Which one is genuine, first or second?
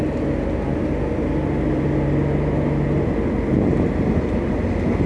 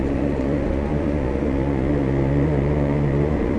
first